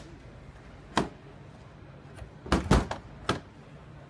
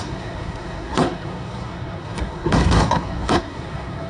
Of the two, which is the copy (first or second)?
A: second